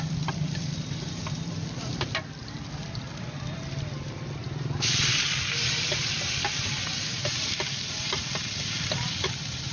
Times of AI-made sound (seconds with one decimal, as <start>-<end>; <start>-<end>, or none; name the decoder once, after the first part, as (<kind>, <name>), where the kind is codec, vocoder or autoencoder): 0.0-9.7 (vocoder, BigVGAN v2)